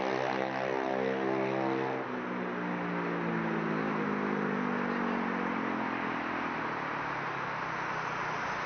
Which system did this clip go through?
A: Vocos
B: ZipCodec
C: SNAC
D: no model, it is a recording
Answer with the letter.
D